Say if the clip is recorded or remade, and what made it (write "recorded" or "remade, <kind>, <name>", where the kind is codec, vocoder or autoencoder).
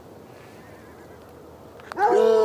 recorded